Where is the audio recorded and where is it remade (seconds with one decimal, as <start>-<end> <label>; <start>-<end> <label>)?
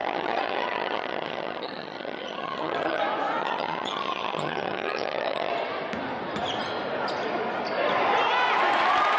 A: 0.0-3.0 remade; 3.0-3.4 recorded; 3.4-5.5 remade; 5.5-9.2 recorded